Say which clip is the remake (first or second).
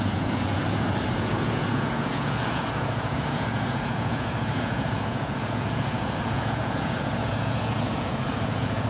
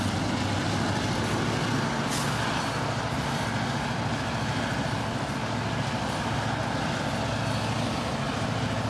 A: first